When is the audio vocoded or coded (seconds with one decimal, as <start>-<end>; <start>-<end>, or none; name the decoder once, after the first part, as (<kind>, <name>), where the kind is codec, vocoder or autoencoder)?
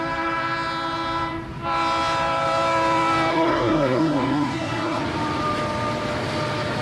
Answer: 3.3-5.0 (codec, SNAC)